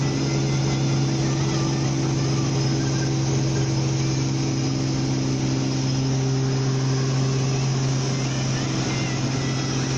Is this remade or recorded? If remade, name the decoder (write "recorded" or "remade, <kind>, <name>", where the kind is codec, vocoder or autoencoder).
recorded